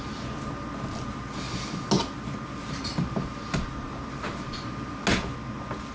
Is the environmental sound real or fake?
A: real